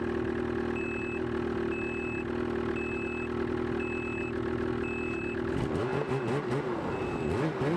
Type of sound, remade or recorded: recorded